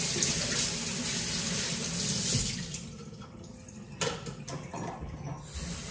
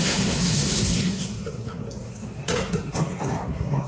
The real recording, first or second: first